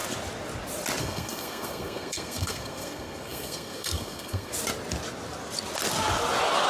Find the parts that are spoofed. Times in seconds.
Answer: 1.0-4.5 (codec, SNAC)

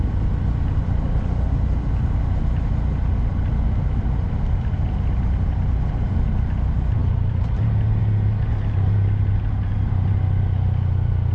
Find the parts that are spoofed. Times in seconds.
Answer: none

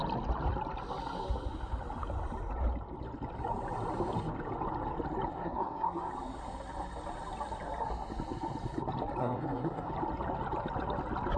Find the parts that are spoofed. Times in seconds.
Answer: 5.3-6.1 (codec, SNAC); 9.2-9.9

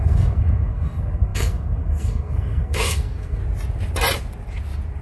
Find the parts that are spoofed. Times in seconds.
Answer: 0.0-3.4 (codec, SNAC)

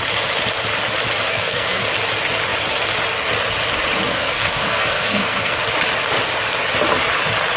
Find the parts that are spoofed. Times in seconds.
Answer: 1.3-1.9 (codec, SNAC); 4.1-5.6

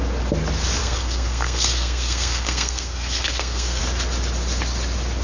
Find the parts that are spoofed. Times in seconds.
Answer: 0.8-3.8 (codec, SNAC)

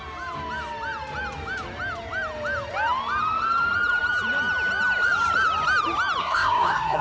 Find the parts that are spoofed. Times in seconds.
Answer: 6.2-7.0 (codec, SNAC)